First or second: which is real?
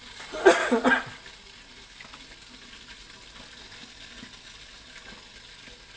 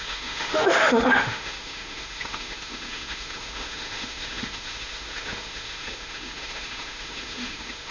first